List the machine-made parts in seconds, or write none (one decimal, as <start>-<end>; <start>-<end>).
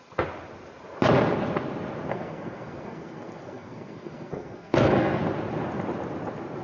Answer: 2.1-5.2